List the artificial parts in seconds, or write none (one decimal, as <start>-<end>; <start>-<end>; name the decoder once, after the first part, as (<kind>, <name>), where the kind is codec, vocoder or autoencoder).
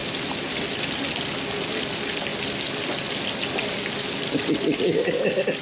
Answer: 0.0-0.6 (vocoder, BigVGAN v2)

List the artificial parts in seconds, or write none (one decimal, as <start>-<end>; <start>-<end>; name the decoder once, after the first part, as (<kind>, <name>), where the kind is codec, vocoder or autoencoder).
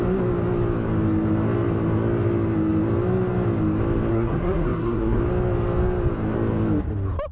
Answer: 4.1-5.2 (codec, SNAC)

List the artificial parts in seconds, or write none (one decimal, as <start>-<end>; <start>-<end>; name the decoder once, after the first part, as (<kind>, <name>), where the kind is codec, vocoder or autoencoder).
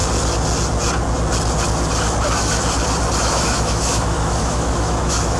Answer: 3.2-5.4 (autoencoder, DAC-VAE)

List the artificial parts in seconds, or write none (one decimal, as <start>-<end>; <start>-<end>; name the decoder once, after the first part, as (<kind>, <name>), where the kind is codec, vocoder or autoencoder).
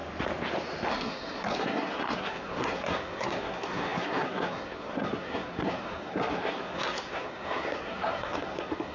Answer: 0.9-8.9 (codec, SNAC)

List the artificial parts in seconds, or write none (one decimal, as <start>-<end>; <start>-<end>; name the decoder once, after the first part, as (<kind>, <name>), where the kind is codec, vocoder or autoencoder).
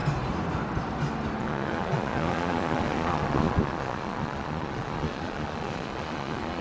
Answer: 1.4-6.6 (vocoder, Vocos)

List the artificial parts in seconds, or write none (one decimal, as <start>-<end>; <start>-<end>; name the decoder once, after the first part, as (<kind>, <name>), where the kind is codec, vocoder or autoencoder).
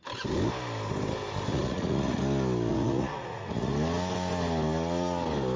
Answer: 1.5-2.2 (vocoder, Vocos); 2.7-3.7